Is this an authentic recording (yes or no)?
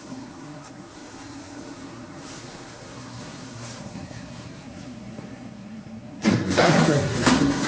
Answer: no